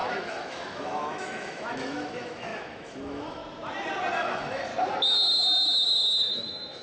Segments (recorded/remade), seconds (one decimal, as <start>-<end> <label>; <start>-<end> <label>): 0.0-3.4 remade; 3.4-4.1 recorded; 4.1-4.7 remade; 4.7-6.3 recorded; 6.3-6.8 remade